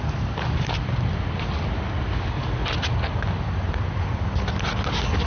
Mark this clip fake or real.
real